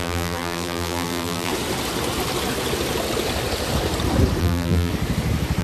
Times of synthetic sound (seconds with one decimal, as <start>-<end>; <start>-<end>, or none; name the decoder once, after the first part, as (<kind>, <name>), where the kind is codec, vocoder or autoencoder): 0.0-1.5 (vocoder, BigVGAN v2); 4.4-4.9